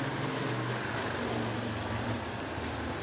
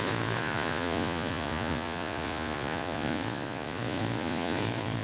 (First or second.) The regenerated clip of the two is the second